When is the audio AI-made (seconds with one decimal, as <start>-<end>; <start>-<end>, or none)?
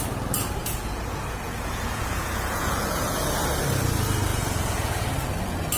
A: 0.6-3.2; 4.3-4.9